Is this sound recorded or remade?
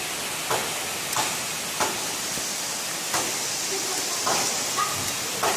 recorded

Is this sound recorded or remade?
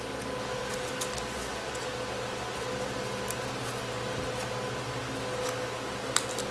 recorded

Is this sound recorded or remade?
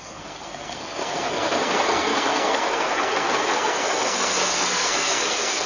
remade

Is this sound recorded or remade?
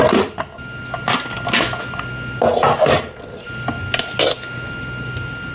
recorded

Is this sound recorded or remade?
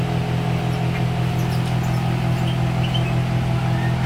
recorded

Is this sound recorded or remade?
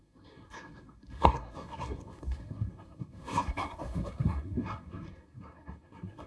remade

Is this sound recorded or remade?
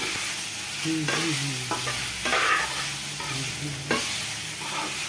recorded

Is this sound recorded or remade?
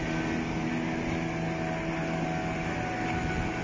recorded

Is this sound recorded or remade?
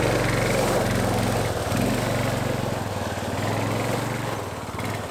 recorded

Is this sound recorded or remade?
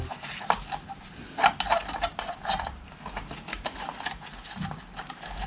recorded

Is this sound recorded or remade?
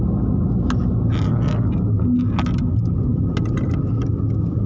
recorded